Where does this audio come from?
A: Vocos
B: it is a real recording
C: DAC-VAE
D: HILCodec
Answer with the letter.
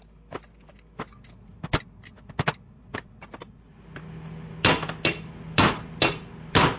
B